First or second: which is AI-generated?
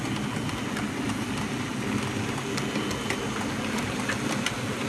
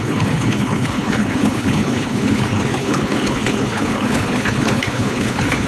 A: second